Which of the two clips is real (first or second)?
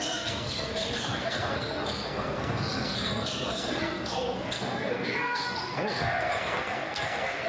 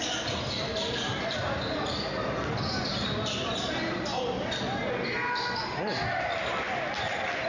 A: second